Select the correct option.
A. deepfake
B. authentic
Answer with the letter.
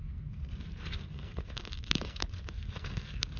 A